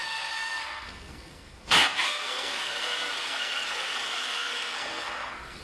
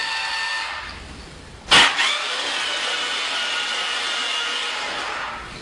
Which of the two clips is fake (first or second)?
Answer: first